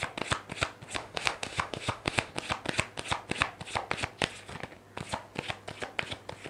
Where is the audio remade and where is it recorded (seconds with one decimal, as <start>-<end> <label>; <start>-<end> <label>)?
0.0-1.0 recorded; 1.0-2.3 remade; 2.3-6.5 recorded